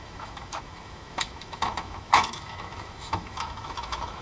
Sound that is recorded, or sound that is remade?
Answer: remade